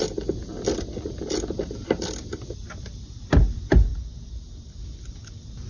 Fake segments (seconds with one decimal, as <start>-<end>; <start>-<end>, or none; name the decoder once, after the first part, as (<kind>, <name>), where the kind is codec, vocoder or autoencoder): none